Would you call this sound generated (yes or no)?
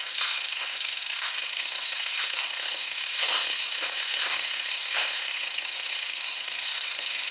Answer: yes